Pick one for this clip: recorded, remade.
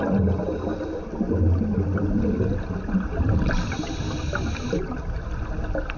recorded